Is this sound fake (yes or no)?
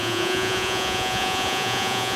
yes